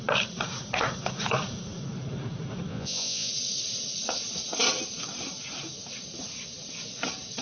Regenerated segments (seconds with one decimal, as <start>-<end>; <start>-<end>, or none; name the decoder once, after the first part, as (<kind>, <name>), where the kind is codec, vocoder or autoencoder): 2.7-3.3 (vocoder, Vocos)